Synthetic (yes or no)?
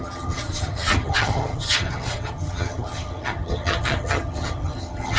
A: yes